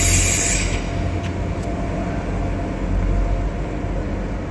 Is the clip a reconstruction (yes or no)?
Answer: no